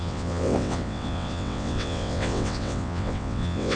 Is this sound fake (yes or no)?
yes